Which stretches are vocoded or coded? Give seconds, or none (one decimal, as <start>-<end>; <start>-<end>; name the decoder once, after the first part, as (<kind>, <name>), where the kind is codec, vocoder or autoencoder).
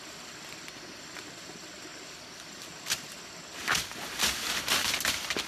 none